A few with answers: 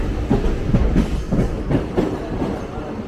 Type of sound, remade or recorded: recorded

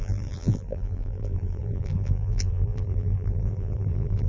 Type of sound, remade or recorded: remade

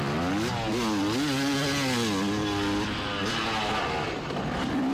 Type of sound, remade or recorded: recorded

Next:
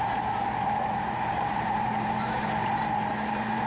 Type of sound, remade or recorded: remade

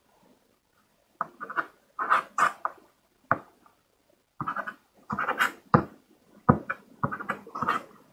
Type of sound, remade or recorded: remade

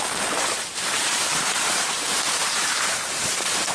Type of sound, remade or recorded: remade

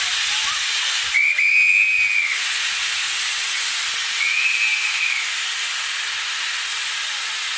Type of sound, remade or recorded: recorded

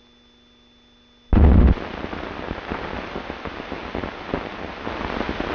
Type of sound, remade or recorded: recorded